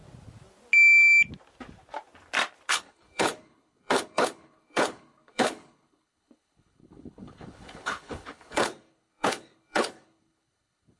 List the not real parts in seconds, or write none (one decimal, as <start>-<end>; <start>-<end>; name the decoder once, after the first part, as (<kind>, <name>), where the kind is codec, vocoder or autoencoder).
2.7-11.0 (codec, HILCodec)